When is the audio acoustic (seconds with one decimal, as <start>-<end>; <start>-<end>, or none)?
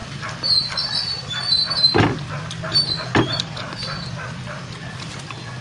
0.0-3.4; 3.8-5.6